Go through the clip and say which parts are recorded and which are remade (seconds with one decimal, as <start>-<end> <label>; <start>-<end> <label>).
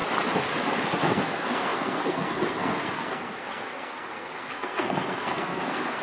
0.0-1.0 recorded; 1.0-6.0 remade